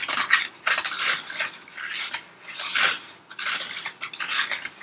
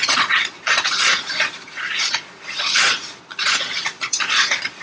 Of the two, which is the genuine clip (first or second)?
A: first